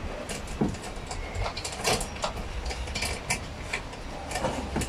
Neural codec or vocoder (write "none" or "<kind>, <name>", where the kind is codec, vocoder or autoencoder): none